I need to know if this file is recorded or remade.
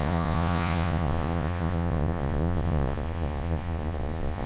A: remade